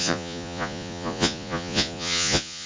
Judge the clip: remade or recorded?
remade